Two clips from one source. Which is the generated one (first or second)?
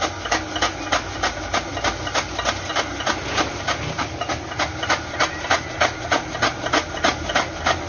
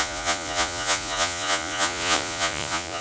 second